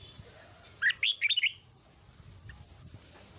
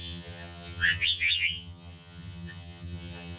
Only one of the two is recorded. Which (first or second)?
first